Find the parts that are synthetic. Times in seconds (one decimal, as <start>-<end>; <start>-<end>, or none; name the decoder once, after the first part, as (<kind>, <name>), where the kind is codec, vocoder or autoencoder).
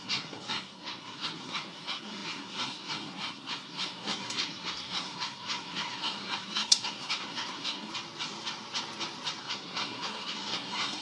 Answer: 0.0-7.9 (codec, SNAC); 9.4-11.0